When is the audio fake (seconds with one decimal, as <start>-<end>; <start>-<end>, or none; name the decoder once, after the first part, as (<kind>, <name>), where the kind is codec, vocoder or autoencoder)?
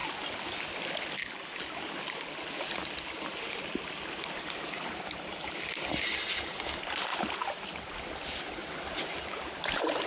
none